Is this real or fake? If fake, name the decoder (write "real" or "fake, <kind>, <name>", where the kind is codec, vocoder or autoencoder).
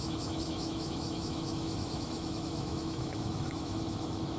fake, autoencoder, DAC-VAE